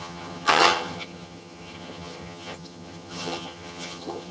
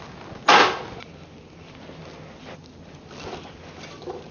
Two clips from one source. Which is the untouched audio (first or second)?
second